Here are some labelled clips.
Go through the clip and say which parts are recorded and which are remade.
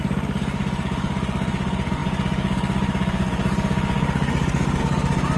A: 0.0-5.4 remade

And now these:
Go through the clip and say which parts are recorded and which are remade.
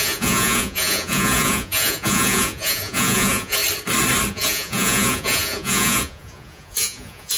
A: 0.0-3.6 remade; 3.6-4.3 recorded; 4.3-7.4 remade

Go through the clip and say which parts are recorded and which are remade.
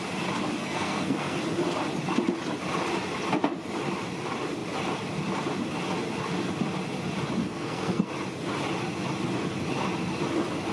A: 0.0-0.6 recorded; 0.6-1.4 remade; 1.4-7.4 recorded; 7.4-8.1 remade; 8.1-10.7 recorded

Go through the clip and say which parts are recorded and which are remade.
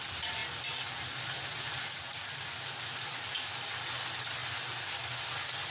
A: 0.0-5.7 recorded